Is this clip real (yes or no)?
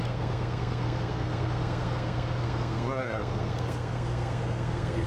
no